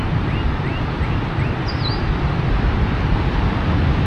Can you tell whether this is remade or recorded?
recorded